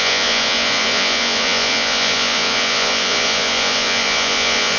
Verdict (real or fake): fake